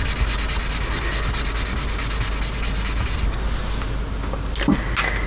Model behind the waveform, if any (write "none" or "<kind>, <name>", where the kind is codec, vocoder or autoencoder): none